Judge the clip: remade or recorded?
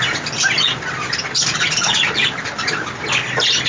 recorded